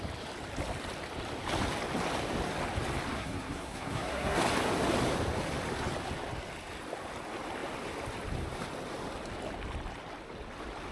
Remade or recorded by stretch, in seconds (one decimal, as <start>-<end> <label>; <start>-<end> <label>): 0.0-3.1 recorded; 3.1-4.4 remade; 4.4-10.9 recorded